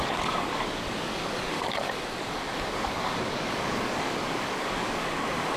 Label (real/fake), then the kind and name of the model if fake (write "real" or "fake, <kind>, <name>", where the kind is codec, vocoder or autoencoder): fake, codec, DAC